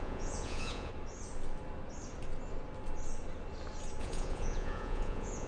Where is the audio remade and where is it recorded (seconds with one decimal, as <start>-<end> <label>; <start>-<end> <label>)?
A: 0.0-0.9 remade; 0.9-4.0 recorded; 4.0-5.5 remade